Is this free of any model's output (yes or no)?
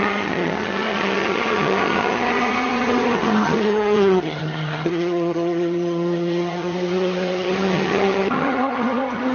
no